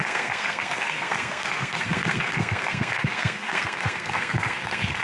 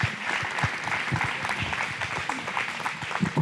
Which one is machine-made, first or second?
first